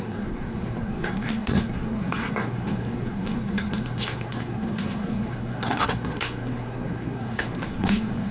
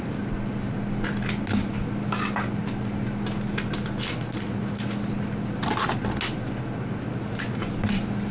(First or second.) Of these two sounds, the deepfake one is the first